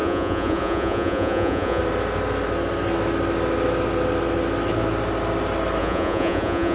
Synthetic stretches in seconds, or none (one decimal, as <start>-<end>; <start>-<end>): 0.0-1.8; 5.8-6.7